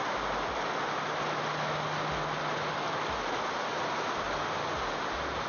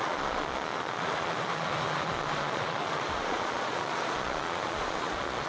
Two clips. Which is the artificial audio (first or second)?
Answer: second